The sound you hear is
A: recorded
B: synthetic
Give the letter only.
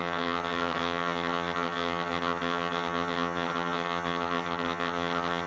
B